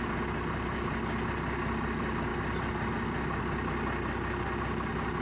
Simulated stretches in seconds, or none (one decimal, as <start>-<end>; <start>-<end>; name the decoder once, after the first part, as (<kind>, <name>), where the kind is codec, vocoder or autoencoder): none